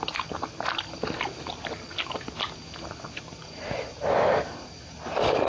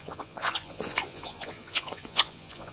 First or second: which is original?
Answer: first